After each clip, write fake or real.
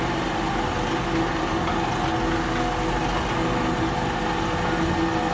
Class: real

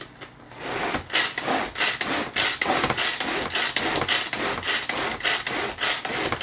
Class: real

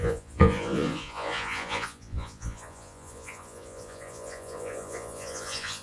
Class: fake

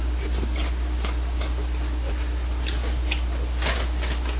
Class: real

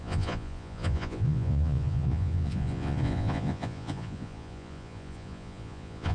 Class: fake